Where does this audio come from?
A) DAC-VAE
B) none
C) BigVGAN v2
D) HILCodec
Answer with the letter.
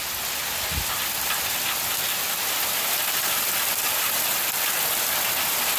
B